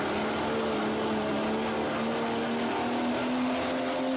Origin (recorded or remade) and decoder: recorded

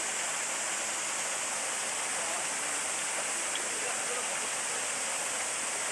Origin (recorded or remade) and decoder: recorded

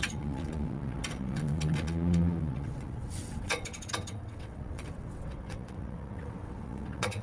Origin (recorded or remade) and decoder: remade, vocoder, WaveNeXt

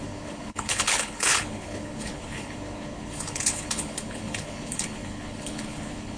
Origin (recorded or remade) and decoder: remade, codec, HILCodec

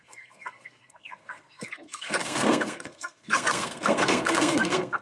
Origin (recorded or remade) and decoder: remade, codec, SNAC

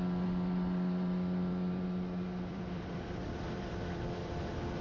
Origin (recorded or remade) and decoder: remade, vocoder, BigVGAN v2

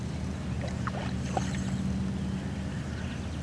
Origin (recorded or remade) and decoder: remade, vocoder, BigVGAN v2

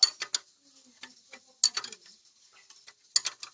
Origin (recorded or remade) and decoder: recorded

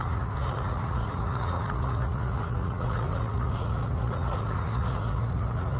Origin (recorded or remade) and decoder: remade, vocoder, Vocos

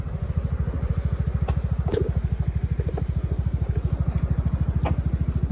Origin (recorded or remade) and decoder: recorded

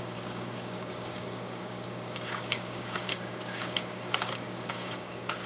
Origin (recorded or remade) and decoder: remade, codec, DAC